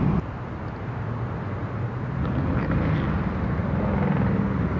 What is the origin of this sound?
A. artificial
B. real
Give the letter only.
B